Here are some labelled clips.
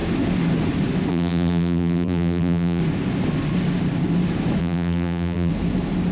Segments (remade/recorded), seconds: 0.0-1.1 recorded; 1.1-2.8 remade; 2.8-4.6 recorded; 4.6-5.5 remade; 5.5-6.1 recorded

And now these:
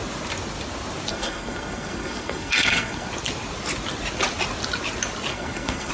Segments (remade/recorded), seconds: 0.0-1.1 recorded; 1.1-3.1 remade; 3.1-5.3 recorded; 5.3-5.9 remade

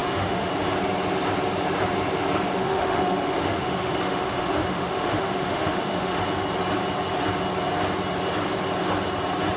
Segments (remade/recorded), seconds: 0.0-0.5 remade; 0.5-2.5 recorded; 2.5-6.2 remade; 6.2-9.6 recorded